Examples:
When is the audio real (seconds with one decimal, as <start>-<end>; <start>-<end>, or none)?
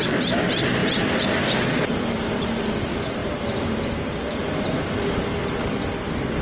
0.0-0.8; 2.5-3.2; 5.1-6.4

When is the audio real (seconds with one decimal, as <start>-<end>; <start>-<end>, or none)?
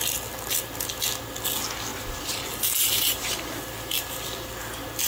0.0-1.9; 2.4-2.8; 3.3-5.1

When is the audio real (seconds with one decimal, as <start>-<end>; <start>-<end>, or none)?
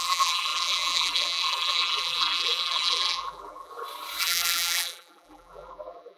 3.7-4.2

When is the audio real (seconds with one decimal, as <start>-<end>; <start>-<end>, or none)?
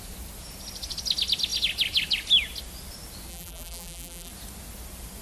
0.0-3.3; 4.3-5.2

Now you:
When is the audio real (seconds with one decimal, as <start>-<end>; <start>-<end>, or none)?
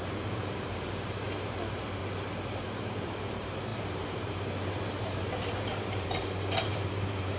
2.0-2.6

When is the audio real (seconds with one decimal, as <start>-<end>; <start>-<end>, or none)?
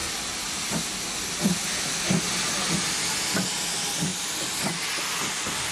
0.0-5.7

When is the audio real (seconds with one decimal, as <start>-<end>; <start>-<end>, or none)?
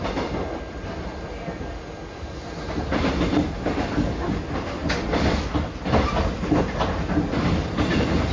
0.0-8.3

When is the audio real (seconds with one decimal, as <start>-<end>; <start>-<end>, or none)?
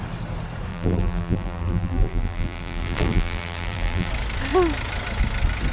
0.0-0.7; 4.1-5.7